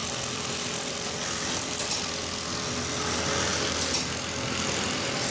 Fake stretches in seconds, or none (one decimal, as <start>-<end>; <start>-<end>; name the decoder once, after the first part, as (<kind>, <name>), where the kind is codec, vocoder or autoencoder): 0.0-2.2 (vocoder, BigVGAN v2)